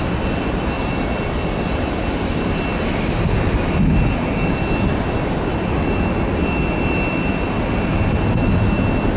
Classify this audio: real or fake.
real